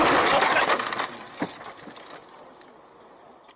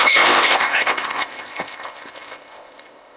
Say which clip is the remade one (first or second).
second